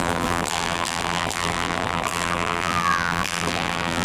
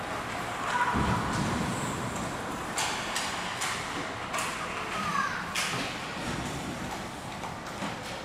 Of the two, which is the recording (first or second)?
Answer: second